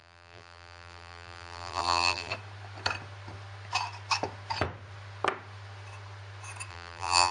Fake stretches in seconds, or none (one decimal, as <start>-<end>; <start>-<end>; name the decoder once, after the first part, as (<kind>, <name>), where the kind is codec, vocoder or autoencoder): 0.0-2.3 (vocoder, BigVGAN v2); 6.7-7.3